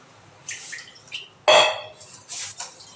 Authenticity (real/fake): real